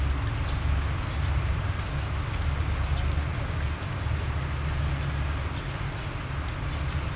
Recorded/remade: recorded